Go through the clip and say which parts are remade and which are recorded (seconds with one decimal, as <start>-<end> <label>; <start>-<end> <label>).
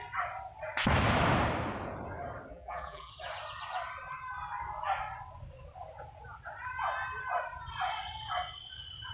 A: 0.0-2.5 recorded; 2.5-3.1 remade; 3.1-9.1 recorded